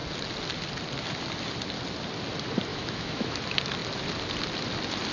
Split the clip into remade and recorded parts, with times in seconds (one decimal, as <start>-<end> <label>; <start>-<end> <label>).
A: 0.0-2.7 recorded; 2.7-3.4 remade; 3.4-5.1 recorded